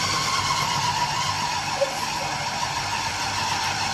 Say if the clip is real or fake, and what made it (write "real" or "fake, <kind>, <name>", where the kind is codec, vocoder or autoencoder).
fake, vocoder, BigVGAN v2